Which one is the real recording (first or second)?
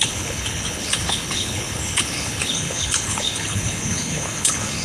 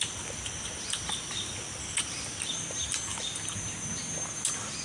second